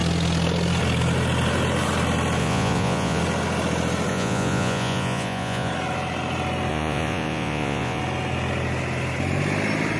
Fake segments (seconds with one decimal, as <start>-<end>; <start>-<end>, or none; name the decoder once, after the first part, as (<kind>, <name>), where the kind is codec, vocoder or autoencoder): 2.4-3.2 (vocoder, Vocos); 4.1-5.7; 6.7-8.0